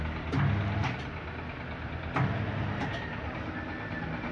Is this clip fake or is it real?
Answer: real